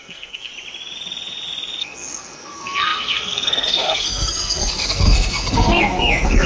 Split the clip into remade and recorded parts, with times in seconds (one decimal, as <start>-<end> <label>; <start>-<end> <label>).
0.0-0.5 remade; 0.5-1.8 recorded; 1.8-6.5 remade